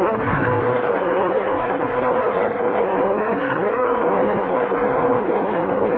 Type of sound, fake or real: fake